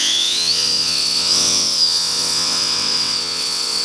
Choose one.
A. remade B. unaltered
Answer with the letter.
A